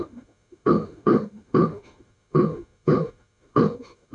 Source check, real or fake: fake